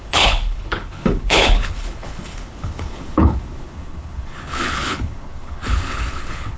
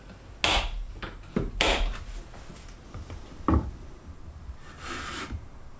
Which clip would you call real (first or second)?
second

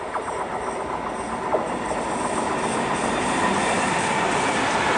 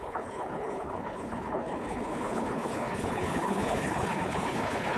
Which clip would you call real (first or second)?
first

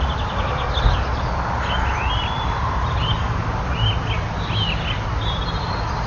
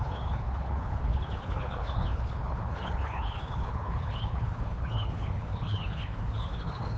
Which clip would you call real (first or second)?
first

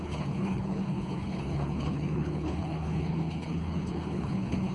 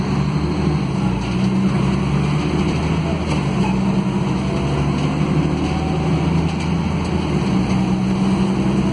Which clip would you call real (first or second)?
second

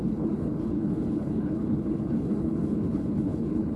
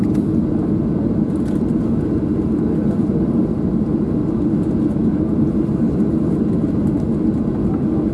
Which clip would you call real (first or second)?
second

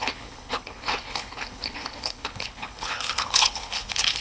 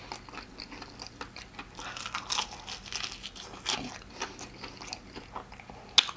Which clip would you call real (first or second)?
second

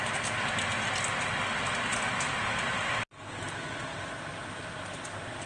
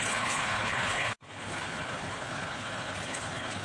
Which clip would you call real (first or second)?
first